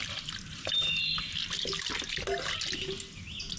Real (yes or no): yes